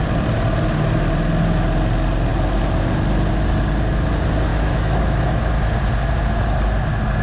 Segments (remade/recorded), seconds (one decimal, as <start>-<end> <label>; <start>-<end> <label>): 0.0-4.5 recorded; 4.5-5.4 remade; 5.4-7.2 recorded